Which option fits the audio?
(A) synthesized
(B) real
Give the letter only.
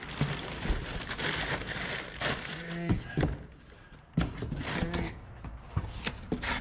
B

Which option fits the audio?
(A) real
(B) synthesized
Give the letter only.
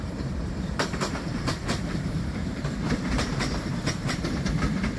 B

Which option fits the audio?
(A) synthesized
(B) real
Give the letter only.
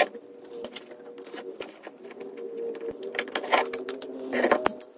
B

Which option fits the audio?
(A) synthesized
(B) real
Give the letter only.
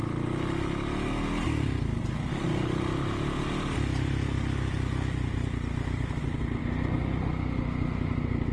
B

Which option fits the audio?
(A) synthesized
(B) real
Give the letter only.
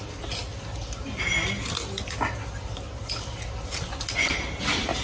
B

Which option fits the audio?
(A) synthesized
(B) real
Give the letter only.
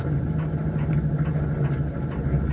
B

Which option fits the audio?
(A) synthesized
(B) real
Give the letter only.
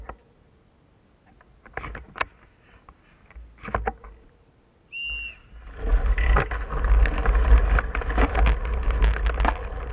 B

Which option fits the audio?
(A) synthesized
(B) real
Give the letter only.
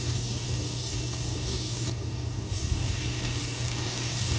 A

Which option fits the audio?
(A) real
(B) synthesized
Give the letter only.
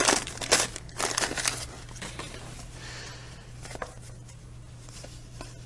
A